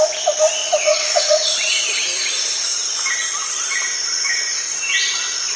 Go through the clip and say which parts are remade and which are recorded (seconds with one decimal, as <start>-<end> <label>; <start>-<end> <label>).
0.0-0.6 recorded; 0.6-1.8 remade; 1.8-5.6 recorded